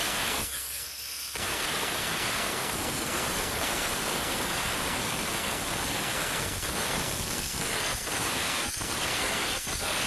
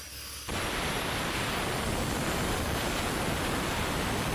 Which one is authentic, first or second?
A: second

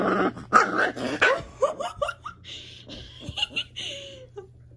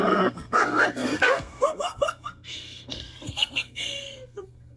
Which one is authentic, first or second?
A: first